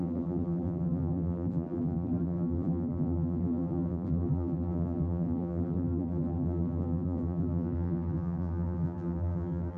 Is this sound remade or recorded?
remade